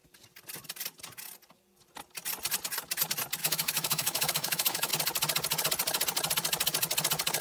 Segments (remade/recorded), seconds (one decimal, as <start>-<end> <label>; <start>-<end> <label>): 0.0-3.4 recorded; 3.4-4.9 remade; 4.9-7.4 recorded